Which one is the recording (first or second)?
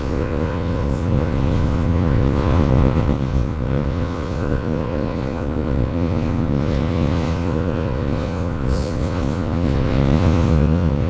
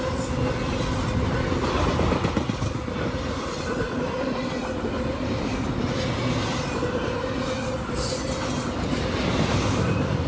second